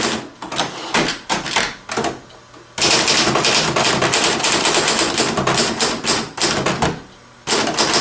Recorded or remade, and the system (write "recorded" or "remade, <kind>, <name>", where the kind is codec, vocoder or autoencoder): recorded